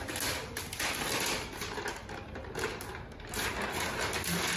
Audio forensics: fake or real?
real